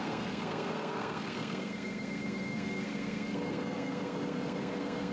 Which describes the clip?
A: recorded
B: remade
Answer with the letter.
B